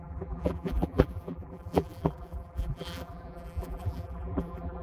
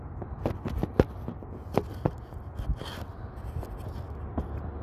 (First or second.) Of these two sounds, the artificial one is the first